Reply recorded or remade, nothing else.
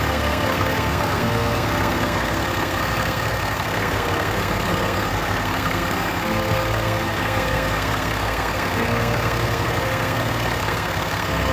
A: remade